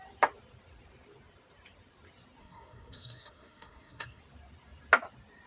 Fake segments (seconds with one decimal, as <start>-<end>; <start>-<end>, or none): 2.4-4.2